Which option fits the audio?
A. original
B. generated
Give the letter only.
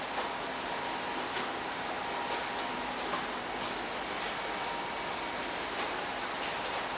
A